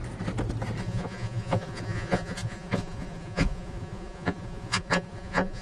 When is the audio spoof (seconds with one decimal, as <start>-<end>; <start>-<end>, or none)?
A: 0.8-5.6